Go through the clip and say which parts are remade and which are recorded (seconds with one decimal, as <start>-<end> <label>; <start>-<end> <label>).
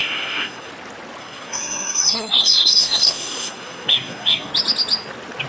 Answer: 0.0-0.7 remade; 0.7-1.2 recorded; 1.2-4.5 remade; 4.5-5.5 recorded